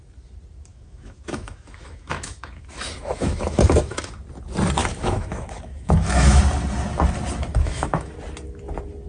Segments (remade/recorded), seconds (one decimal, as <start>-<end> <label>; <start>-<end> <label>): 0.0-0.7 recorded; 0.7-4.1 remade; 4.1-4.8 recorded; 4.8-6.4 remade; 6.4-7.5 recorded; 7.5-8.1 remade; 8.1-9.1 recorded